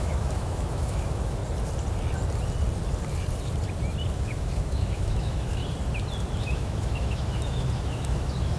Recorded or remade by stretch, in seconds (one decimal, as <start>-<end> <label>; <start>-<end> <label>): 0.0-1.4 remade; 1.4-4.1 recorded; 4.1-5.6 remade; 5.6-6.4 recorded; 6.4-8.6 remade